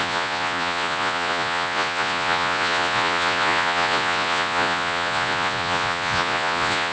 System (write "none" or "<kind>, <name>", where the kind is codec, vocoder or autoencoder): vocoder, Vocos